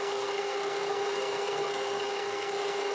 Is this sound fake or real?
fake